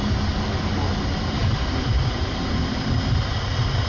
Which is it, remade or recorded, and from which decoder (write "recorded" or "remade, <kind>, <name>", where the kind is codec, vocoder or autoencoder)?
recorded